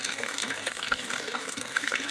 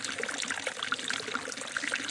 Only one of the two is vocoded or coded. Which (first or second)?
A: first